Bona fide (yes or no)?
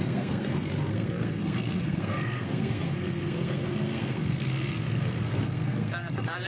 no